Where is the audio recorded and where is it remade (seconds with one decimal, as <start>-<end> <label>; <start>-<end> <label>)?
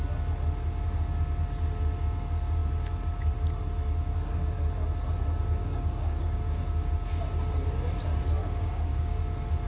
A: 0.0-5.6 recorded; 5.6-6.9 remade; 6.9-8.4 recorded; 8.4-9.2 remade; 9.2-9.7 recorded